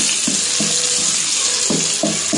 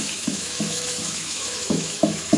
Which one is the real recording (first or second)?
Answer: first